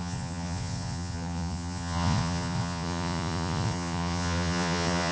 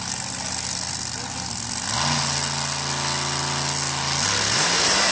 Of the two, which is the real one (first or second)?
second